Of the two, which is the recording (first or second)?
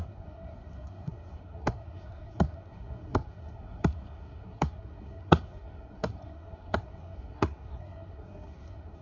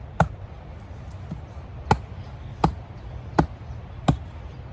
second